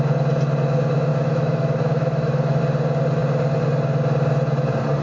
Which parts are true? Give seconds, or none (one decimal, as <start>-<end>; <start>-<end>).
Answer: 0.0-1.1; 2.6-5.0